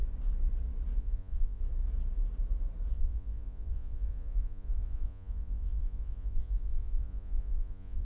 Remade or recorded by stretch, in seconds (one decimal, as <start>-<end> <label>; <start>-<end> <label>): 0.0-1.0 recorded; 1.0-1.6 remade; 1.6-2.9 recorded; 2.9-8.0 remade